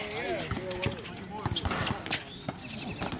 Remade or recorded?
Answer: recorded